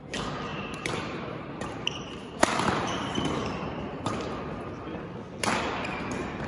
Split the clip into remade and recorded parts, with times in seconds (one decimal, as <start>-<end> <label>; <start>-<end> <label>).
0.0-0.5 recorded; 0.5-4.4 remade; 4.4-6.5 recorded